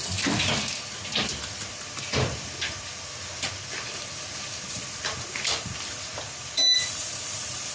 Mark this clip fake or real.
fake